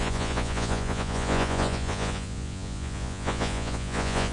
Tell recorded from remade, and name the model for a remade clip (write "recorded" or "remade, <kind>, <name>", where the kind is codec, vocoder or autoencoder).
remade, vocoder, Vocos